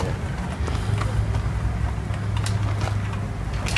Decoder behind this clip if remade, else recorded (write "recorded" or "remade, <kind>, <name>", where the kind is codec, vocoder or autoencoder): recorded